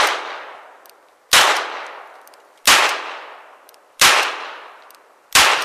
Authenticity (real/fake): real